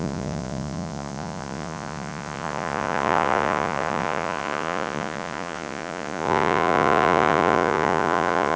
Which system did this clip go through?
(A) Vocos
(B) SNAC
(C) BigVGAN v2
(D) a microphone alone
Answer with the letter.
A